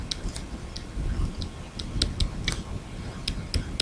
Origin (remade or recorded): recorded